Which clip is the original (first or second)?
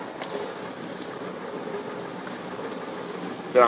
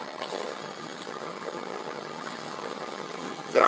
first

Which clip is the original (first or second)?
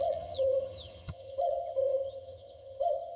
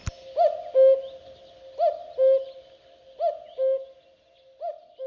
second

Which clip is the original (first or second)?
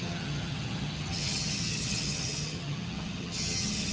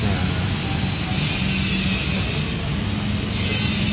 second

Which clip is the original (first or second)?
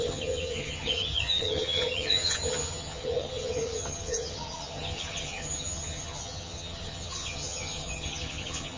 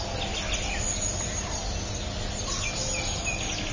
second